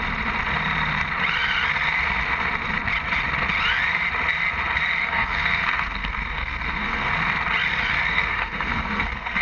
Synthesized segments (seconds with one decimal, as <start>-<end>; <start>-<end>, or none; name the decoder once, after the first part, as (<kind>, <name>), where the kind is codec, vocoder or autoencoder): 5.0-7.1 (codec, SNAC); 8.1-9.4